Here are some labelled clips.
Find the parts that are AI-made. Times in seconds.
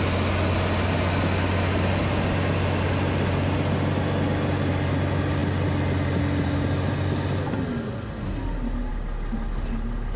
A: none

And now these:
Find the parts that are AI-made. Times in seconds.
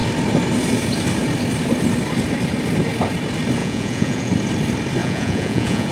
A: 3.6-4.3 (vocoder, Vocos); 5.0-5.9